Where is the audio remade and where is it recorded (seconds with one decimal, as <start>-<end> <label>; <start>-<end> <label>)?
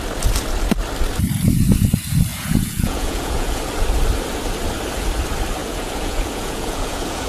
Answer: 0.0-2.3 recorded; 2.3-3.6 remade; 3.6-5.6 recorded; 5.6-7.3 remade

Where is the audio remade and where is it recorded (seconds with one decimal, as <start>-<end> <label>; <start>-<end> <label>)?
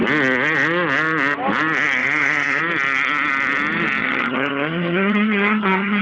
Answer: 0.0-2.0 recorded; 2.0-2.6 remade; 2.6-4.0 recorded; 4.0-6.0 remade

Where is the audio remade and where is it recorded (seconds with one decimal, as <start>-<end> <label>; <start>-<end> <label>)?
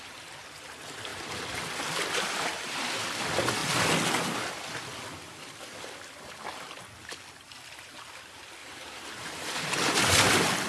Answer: 0.0-1.1 recorded; 1.1-2.9 remade; 2.9-3.6 recorded; 3.6-6.8 remade; 6.8-8.6 recorded; 8.6-9.9 remade; 9.9-10.7 recorded